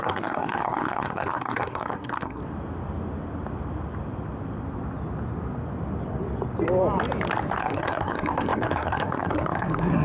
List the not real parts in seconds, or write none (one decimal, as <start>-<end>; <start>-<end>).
0.0-2.4; 7.6-10.0